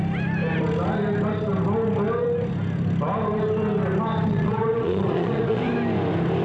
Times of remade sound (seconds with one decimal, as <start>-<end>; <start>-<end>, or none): 4.3-5.6